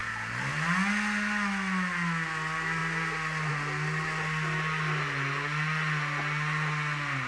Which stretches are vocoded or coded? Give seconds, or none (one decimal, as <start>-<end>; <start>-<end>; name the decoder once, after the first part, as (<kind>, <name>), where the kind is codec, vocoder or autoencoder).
none